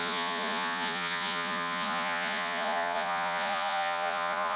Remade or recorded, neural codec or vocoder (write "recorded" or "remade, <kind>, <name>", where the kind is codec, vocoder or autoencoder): remade, vocoder, Vocos